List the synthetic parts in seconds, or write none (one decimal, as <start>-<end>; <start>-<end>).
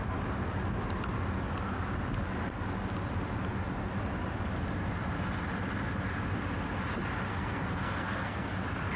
7.3-8.5